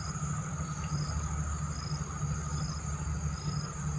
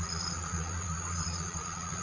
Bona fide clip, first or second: first